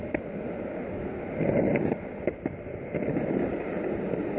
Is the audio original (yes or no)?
yes